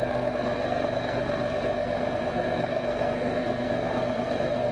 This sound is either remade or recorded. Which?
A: remade